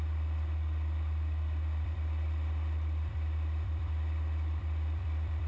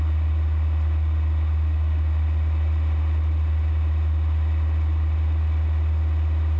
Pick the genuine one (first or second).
second